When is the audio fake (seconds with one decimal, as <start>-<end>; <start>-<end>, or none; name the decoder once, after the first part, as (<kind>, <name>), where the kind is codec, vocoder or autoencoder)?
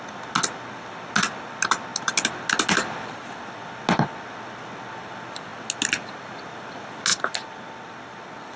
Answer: none